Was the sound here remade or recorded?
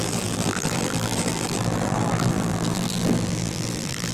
remade